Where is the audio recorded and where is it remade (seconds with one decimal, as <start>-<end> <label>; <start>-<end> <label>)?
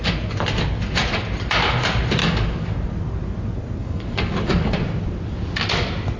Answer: 0.0-2.2 recorded; 2.2-2.7 remade; 2.7-3.8 recorded; 3.8-4.7 remade; 4.7-6.2 recorded